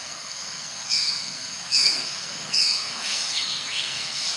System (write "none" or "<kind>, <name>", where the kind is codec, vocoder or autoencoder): codec, SNAC